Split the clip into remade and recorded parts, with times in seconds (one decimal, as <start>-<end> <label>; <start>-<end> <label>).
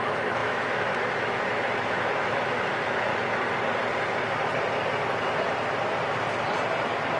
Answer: 0.0-3.1 remade; 3.1-7.2 recorded